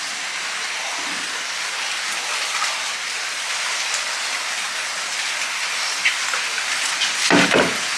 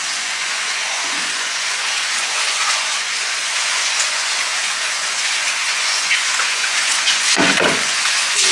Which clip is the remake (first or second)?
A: second